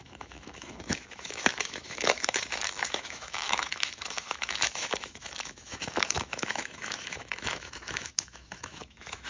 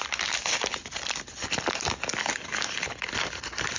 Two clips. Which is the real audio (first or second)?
second